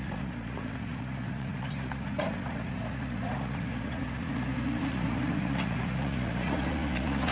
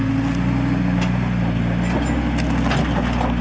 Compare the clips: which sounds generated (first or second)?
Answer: first